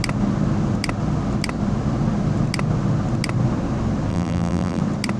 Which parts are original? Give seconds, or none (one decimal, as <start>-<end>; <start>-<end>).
0.0-4.1; 4.8-5.2

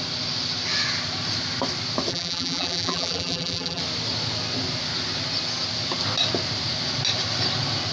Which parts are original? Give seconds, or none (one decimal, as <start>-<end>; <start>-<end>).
0.0-2.1; 3.8-7.9

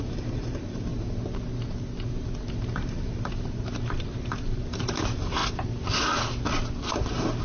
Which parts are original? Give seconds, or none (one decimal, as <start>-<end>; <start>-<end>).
0.9-2.5; 5.4-6.9

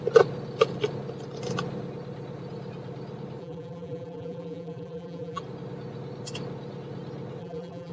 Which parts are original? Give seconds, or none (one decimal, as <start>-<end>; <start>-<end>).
0.0-3.4; 5.4-7.4